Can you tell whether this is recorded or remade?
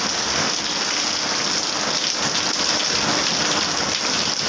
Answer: recorded